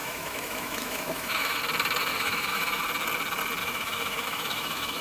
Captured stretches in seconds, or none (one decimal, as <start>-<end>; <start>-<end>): 1.6-2.1; 2.8-3.6